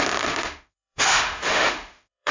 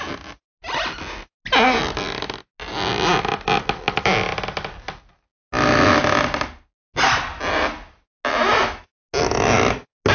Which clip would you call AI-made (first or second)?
first